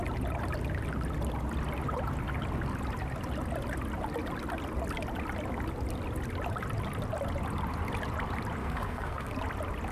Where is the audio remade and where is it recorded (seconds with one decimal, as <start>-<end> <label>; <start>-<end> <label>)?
0.0-8.6 recorded; 8.6-9.3 remade; 9.3-9.9 recorded